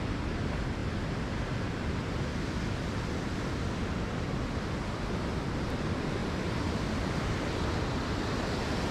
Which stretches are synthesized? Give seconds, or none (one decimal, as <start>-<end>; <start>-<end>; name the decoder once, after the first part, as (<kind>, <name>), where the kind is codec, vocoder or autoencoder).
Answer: none